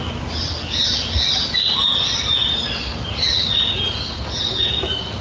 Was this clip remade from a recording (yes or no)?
no